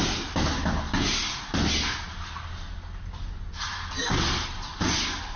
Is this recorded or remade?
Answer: recorded